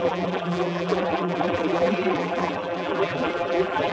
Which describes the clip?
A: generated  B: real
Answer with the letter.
A